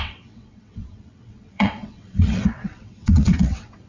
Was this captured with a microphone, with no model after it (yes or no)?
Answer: no